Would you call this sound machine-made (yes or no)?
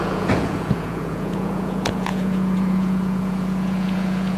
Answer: yes